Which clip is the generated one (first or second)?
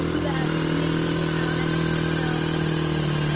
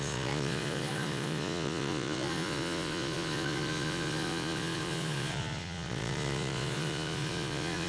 second